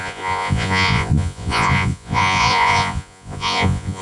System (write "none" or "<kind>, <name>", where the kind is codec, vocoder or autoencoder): vocoder, Vocos